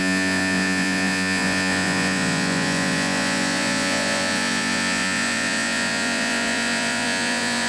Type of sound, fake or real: fake